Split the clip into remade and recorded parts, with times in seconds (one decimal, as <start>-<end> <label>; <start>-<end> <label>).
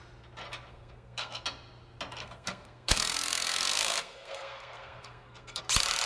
0.0-0.7 recorded; 0.7-1.4 remade; 1.4-2.2 recorded; 2.2-5.6 remade; 5.6-6.1 recorded